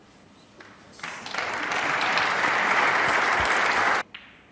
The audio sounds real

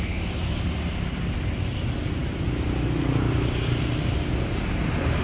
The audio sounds real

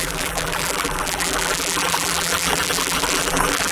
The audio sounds fake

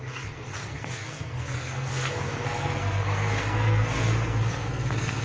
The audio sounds fake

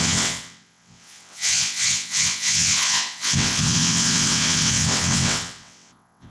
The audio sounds fake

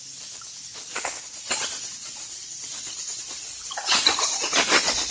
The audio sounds real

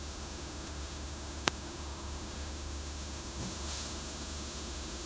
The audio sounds fake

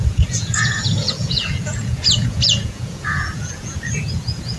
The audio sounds fake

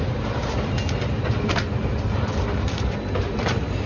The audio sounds fake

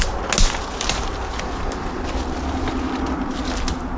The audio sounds real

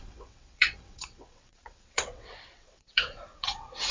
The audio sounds fake